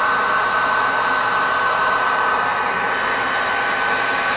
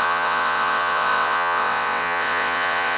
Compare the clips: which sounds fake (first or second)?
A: second